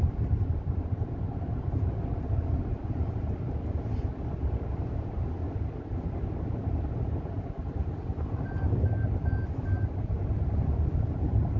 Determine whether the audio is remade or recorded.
recorded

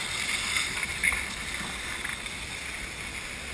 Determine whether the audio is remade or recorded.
recorded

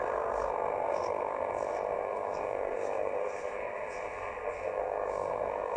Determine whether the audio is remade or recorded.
remade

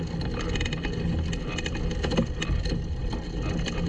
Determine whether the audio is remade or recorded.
recorded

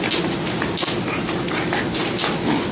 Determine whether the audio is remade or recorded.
recorded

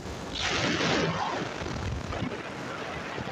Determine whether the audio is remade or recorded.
recorded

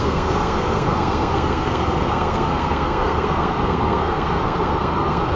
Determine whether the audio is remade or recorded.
remade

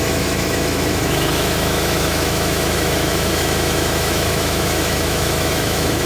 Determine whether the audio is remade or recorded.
remade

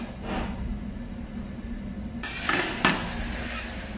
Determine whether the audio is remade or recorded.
recorded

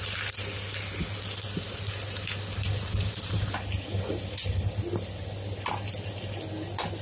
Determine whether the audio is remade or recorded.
recorded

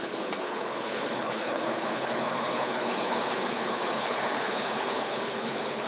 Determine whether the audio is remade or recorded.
remade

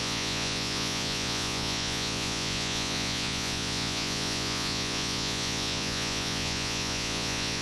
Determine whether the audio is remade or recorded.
remade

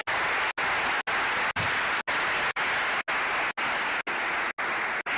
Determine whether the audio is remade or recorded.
recorded